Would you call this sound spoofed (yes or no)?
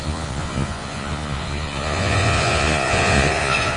yes